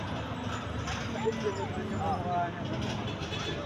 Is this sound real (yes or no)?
yes